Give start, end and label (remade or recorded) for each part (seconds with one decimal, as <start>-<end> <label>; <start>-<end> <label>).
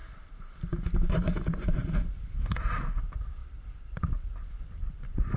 0.0-5.4 recorded